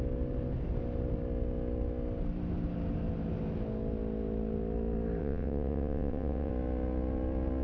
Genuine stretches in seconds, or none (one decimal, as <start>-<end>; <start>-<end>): 0.0-5.2; 6.5-7.6